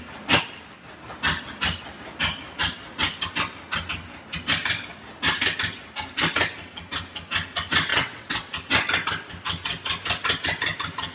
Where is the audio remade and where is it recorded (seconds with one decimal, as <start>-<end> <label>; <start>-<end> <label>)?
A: 0.0-7.9 recorded; 7.9-8.5 remade; 8.5-11.1 recorded

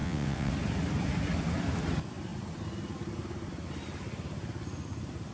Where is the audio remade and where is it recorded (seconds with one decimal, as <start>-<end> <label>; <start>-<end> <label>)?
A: 0.0-0.5 remade; 0.5-5.3 recorded